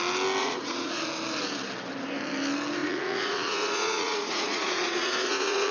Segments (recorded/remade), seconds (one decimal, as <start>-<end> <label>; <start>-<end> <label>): 0.0-0.4 recorded; 0.4-1.0 remade; 1.0-2.8 recorded; 2.8-5.7 remade